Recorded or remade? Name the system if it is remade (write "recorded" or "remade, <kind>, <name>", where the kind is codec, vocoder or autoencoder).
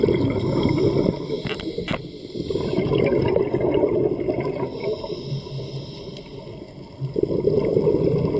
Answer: recorded